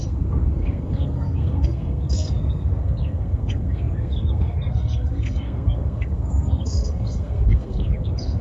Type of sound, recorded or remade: remade